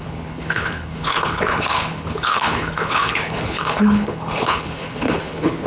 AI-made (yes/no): yes